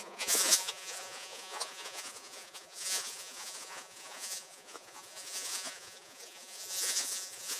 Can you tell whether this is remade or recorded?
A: remade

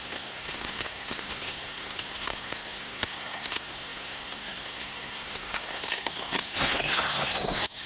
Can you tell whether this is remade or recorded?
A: remade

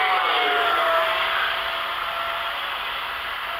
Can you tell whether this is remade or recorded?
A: recorded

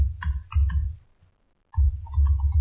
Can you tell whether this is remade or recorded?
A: recorded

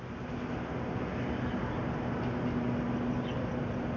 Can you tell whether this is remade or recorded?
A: recorded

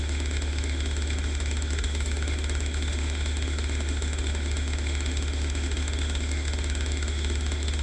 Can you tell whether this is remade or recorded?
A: remade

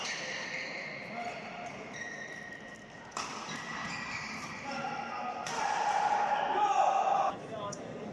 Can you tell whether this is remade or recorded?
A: recorded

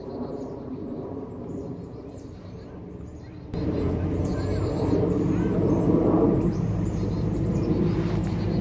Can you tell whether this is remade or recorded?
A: remade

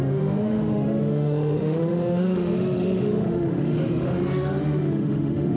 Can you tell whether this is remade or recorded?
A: remade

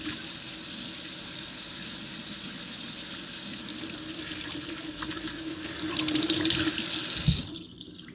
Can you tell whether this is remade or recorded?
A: recorded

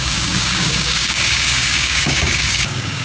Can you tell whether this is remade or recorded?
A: remade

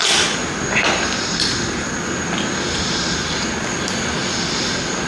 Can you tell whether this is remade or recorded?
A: recorded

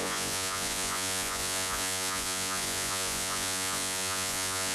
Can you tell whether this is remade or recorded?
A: remade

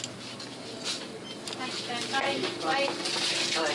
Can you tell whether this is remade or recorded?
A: recorded